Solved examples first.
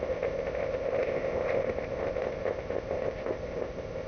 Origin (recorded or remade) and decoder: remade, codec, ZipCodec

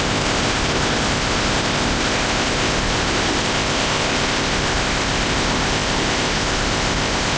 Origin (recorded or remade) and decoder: remade, codec, ZipCodec